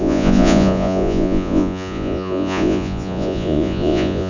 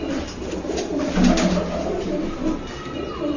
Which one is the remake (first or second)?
first